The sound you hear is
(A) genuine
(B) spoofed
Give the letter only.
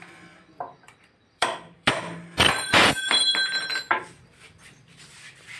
B